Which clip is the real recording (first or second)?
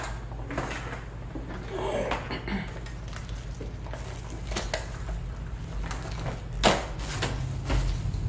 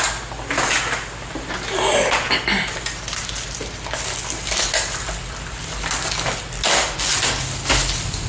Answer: first